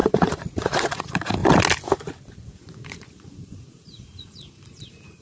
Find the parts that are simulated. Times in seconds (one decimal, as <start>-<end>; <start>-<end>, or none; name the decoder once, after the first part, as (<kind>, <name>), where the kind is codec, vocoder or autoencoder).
0.0-1.4 (vocoder, Vocos); 2.5-5.2